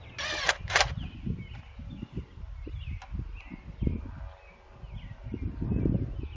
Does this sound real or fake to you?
real